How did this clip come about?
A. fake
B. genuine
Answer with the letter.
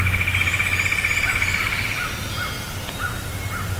B